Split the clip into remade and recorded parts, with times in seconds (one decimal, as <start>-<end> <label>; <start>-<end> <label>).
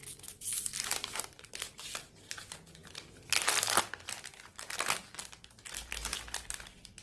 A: 0.0-7.0 recorded